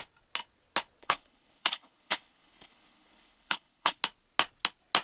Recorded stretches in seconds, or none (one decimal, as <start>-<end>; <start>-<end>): 0.0-1.0; 4.0-5.0